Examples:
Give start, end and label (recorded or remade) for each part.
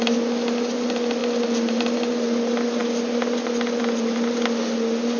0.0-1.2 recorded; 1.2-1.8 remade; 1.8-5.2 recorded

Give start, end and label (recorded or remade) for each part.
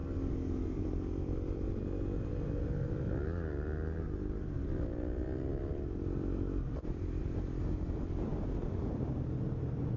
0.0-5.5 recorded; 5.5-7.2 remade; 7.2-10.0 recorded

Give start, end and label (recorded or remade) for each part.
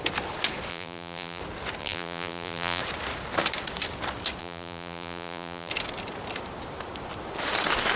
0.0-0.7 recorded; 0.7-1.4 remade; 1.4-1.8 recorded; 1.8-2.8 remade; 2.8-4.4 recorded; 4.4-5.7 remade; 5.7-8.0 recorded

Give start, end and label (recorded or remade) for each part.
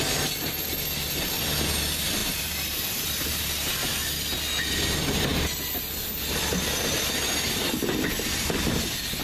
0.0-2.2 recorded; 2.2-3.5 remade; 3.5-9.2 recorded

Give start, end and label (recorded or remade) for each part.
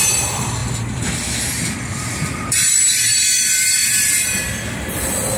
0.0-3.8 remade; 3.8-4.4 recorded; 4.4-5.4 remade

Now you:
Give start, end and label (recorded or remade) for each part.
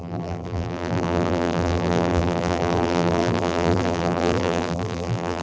0.0-5.4 remade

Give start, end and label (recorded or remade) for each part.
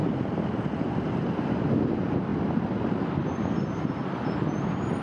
0.0-1.0 recorded; 1.0-2.3 remade; 2.3-3.9 recorded; 3.9-5.0 remade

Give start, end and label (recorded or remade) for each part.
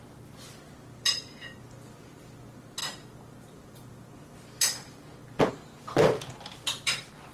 0.0-7.3 recorded